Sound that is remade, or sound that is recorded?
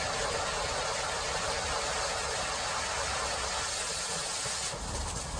recorded